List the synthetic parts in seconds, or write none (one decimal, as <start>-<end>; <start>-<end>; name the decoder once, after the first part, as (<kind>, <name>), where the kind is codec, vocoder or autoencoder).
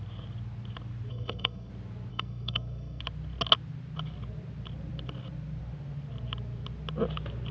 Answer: 1.1-1.7 (codec, SNAC); 2.1-3.0